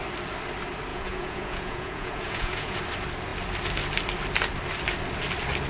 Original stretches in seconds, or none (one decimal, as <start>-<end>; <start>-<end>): 0.0-0.9; 2.8-5.7

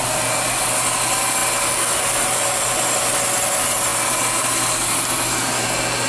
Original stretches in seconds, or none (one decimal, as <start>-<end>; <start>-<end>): 0.0-6.1

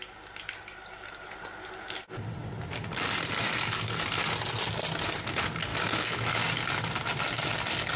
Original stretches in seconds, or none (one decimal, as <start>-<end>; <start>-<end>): 0.0-5.7; 6.3-8.0

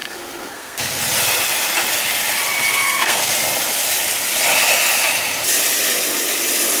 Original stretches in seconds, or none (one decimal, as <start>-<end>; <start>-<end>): 1.0-2.7; 3.3-6.8

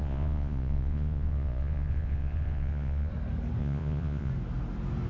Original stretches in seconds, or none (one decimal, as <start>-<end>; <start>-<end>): 3.1-3.6; 4.3-5.1